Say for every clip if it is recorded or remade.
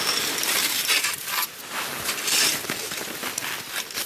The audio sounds recorded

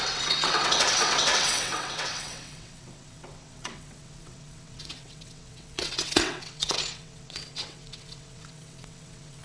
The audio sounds remade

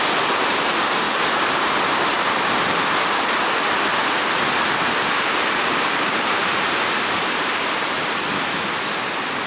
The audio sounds remade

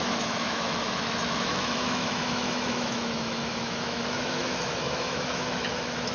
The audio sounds remade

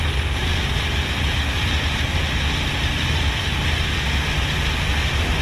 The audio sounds recorded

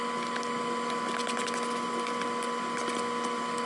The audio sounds recorded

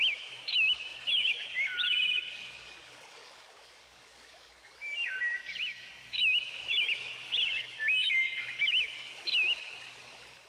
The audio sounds remade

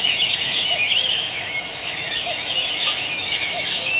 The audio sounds remade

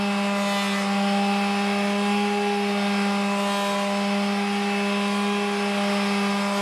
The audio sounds recorded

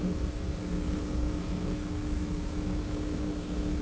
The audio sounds remade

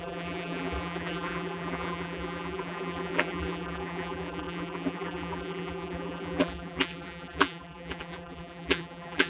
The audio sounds remade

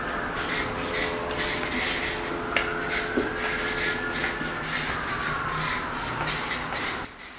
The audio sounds recorded